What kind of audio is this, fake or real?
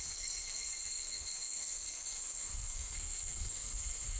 fake